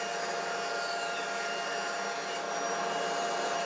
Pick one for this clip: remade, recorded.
recorded